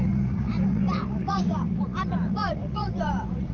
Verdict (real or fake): fake